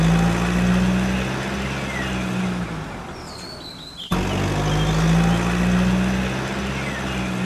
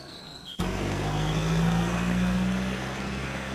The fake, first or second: second